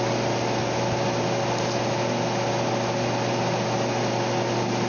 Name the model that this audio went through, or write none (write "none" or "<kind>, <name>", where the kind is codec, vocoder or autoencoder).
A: none